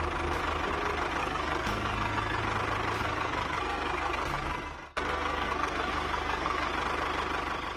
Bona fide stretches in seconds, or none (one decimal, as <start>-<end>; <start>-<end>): 0.0-1.2; 2.4-3.0; 6.7-7.8

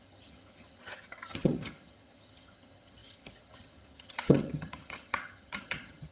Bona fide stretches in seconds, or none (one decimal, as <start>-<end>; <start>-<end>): none